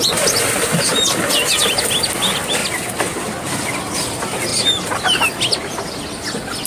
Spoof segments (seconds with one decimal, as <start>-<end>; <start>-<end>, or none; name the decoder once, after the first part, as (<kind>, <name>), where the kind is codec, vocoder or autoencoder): none